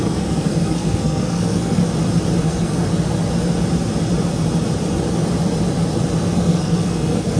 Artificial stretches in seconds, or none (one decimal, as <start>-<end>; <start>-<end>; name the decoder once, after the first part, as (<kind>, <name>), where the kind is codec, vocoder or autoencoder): 0.0-1.8 (codec, SNAC); 2.4-2.9; 6.4-7.4